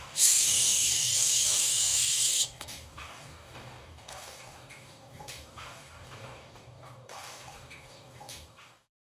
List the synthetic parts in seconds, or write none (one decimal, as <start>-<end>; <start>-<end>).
0.0-9.1